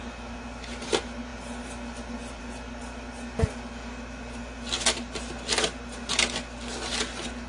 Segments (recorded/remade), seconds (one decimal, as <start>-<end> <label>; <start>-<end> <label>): 0.0-7.5 recorded